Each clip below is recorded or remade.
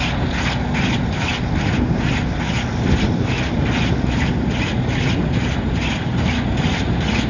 recorded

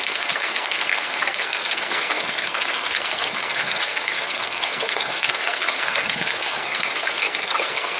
remade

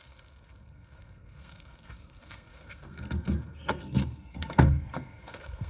remade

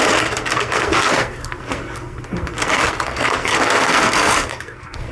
remade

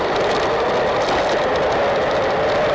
recorded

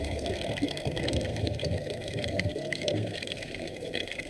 remade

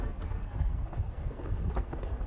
remade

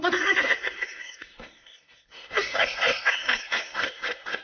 remade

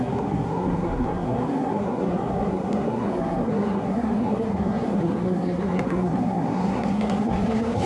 remade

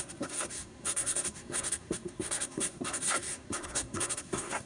remade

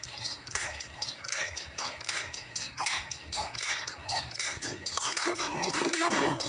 remade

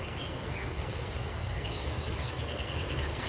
remade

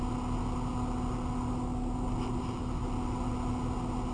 recorded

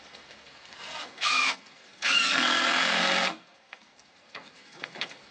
remade